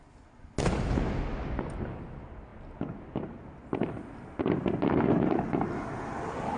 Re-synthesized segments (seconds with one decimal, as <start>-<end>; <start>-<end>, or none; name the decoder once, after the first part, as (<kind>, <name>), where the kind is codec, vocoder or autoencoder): none